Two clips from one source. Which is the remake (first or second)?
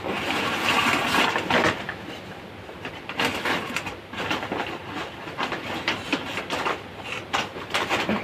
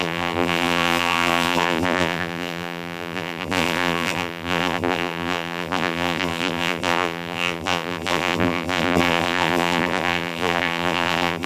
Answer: second